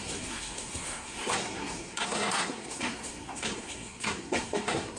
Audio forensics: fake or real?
fake